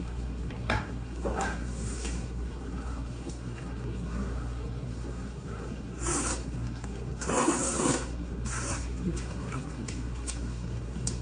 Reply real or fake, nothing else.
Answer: fake